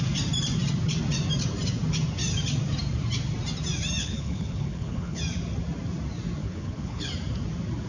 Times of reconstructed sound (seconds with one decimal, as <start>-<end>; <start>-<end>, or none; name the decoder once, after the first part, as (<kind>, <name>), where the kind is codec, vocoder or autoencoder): 4.0-5.2 (codec, HILCodec); 6.4-7.1